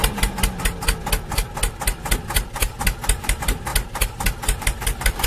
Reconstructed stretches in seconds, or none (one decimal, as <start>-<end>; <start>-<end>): 3.2-3.7; 4.6-5.3